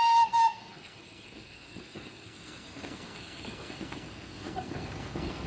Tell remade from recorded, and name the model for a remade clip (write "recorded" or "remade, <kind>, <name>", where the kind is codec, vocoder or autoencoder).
remade, codec, SNAC